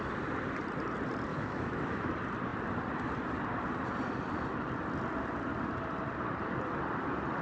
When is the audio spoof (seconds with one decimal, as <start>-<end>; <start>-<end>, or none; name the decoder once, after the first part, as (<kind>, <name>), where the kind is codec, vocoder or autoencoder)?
1.3-2.1 (autoencoder, DAC-VAE)